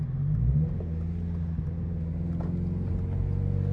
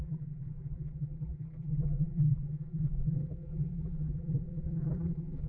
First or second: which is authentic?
first